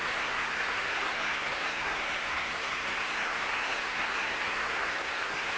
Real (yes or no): no